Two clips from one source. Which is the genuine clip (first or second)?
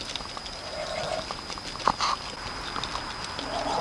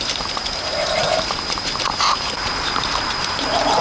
first